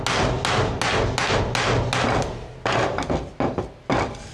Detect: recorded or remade recorded